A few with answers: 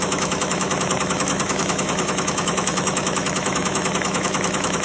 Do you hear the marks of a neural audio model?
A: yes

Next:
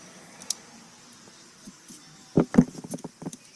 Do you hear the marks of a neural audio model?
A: no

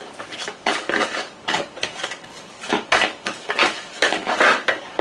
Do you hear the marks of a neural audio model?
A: yes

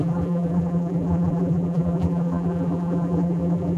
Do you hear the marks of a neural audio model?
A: yes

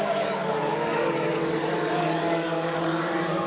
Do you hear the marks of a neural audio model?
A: yes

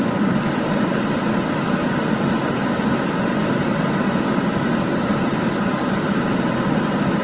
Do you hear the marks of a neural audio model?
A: no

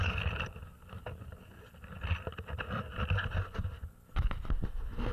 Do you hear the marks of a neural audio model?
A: no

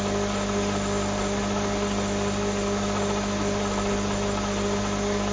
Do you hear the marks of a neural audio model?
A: no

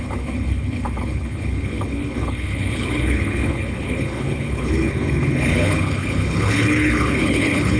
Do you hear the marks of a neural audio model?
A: yes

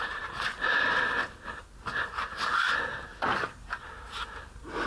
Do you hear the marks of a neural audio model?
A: yes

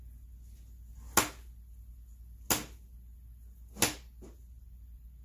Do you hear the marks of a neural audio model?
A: no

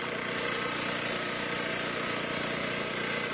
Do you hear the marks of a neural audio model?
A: no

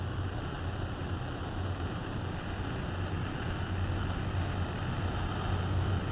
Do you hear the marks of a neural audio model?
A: no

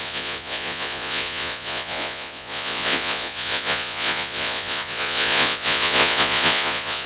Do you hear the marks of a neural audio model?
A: yes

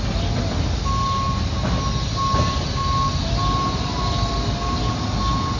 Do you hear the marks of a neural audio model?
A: no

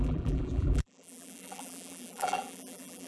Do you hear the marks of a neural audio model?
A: yes